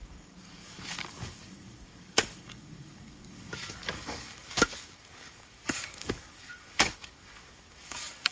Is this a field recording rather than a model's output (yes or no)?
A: no